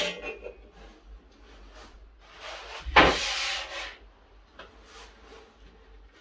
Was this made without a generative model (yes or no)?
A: yes